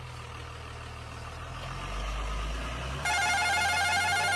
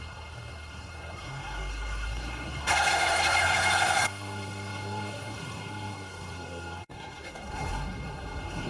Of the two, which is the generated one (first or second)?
second